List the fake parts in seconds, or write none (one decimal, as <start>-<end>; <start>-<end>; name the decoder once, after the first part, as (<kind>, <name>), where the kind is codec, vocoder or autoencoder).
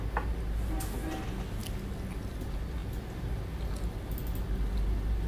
none